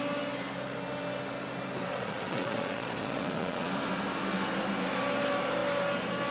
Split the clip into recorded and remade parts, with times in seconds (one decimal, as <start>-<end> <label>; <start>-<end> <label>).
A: 0.0-1.9 recorded; 1.9-3.7 remade; 3.7-6.3 recorded